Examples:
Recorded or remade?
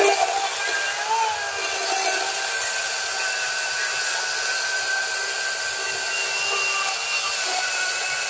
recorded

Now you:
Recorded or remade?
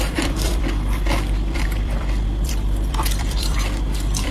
remade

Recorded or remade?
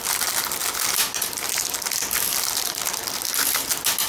recorded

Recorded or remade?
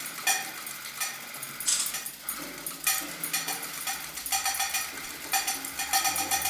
recorded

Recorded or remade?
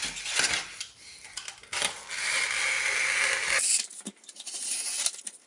recorded